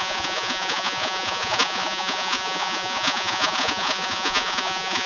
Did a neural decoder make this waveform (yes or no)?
yes